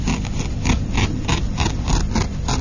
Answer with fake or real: real